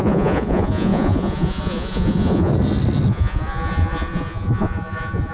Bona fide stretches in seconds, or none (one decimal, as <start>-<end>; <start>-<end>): 2.5-3.1